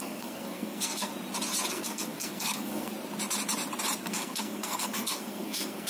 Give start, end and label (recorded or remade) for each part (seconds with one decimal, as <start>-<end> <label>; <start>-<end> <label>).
0.0-1.1 remade; 1.1-1.7 recorded; 1.7-2.9 remade; 2.9-4.0 recorded; 4.0-5.9 remade